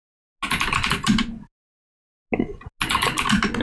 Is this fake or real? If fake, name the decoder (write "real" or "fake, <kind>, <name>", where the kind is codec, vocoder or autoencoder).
real